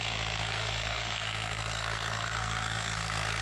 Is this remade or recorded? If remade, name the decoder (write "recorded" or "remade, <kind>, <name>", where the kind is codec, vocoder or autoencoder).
remade, codec, SNAC